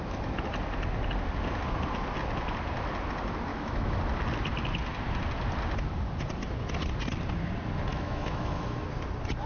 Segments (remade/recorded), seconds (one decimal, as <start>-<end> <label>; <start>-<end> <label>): 0.0-3.5 recorded; 3.5-4.0 remade; 4.0-7.9 recorded; 7.9-8.8 remade; 8.8-9.5 recorded